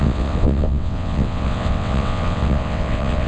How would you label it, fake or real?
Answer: fake